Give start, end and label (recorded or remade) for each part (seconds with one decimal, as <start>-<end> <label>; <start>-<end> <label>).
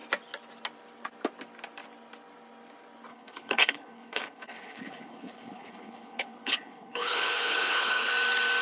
0.0-3.1 recorded; 3.1-8.1 remade; 8.1-8.6 recorded